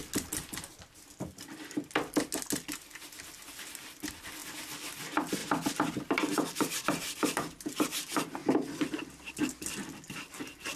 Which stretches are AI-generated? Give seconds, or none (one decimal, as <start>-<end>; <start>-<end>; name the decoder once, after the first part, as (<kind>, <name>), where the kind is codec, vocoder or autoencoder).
none